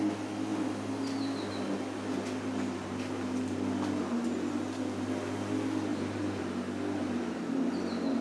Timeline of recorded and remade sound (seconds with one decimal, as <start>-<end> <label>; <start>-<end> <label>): 0.0-8.2 recorded